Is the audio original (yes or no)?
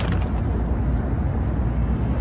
yes